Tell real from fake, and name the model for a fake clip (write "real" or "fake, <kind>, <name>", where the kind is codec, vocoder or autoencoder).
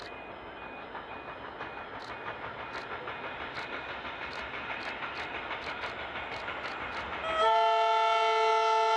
real